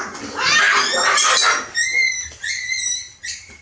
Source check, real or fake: real